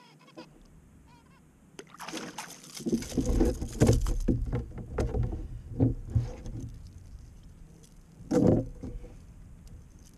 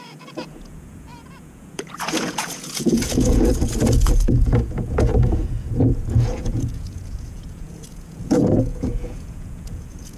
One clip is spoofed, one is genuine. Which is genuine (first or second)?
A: first